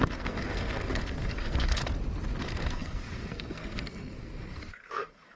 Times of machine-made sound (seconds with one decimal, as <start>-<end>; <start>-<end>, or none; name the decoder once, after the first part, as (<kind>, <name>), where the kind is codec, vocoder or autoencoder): 0.0-1.8 (codec, SNAC); 2.4-5.4